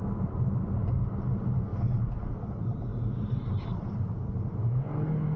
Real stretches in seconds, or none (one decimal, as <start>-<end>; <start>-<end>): 0.0-5.4